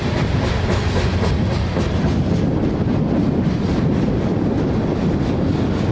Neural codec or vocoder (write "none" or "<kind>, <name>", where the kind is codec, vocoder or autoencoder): none